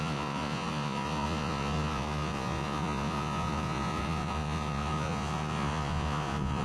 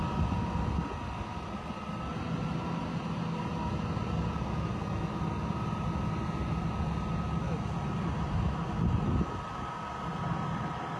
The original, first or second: second